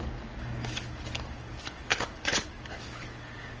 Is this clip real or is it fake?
fake